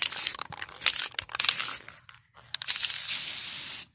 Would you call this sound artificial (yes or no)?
no